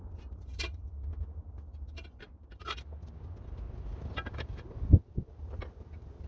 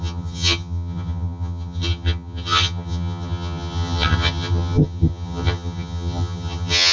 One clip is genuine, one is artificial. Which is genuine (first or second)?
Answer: first